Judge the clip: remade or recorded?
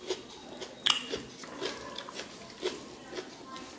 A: recorded